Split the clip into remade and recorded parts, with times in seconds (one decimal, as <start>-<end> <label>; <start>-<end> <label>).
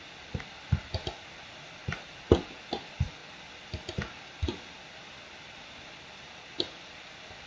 0.0-7.5 recorded